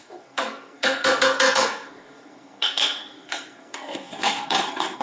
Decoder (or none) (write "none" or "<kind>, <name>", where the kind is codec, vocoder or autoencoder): codec, SNAC